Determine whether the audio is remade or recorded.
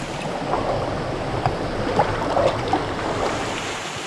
recorded